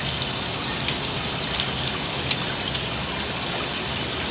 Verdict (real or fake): real